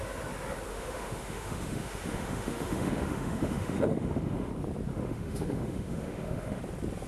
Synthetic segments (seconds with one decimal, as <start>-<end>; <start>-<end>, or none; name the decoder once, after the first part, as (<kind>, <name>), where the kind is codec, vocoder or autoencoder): 0.7-4.5 (autoencoder, DAC-VAE); 4.9-6.6